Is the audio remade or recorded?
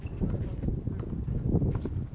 recorded